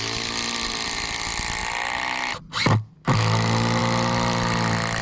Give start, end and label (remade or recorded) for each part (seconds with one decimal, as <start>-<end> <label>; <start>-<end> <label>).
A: 0.0-5.0 recorded